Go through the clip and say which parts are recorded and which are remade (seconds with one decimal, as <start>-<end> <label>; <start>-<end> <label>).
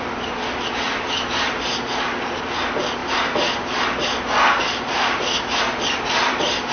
0.0-6.7 recorded